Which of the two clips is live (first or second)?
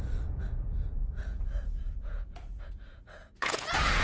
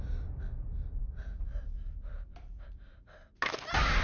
second